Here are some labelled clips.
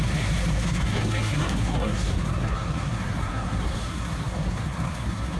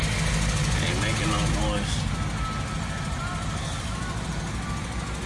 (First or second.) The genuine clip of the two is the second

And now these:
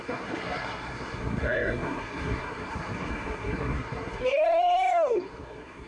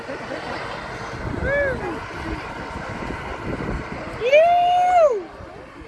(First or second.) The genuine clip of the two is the second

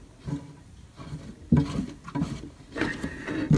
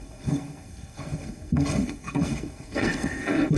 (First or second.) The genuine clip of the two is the first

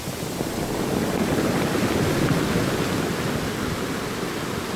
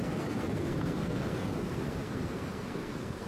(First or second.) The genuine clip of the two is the first